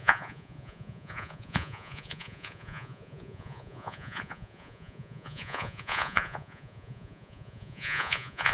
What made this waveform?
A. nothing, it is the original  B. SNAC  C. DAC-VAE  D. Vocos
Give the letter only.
D